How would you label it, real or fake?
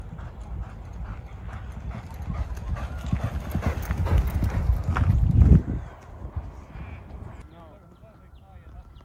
real